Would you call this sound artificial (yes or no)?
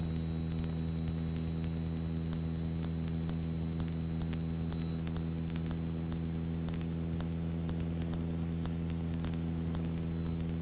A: no